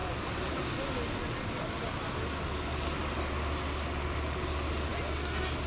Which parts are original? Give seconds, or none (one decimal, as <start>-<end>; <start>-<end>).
0.0-5.7